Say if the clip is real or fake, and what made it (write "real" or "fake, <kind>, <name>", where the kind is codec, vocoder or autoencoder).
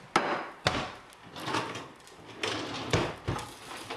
real